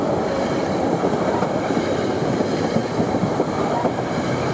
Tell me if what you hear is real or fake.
fake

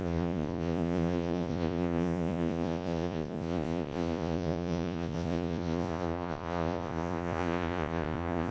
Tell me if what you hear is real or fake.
fake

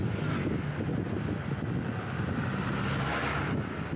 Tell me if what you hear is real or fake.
real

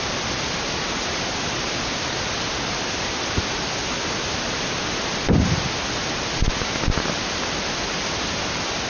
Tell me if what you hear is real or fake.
real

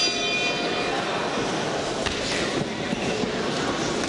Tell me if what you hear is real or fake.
real